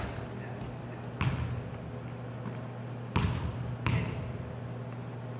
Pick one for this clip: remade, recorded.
recorded